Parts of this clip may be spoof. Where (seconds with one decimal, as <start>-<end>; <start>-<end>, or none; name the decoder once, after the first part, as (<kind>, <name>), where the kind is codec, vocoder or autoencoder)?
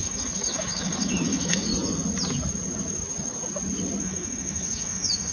0.0-1.7 (autoencoder, DAC-VAE); 4.0-5.3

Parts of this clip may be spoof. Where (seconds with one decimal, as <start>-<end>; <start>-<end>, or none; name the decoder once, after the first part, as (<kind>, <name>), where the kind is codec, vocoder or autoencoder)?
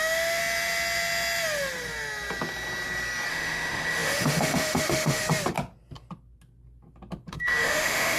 0.0-0.4 (autoencoder, DAC-VAE); 3.3-5.2; 7.3-8.2